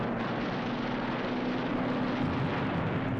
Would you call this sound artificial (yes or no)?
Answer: no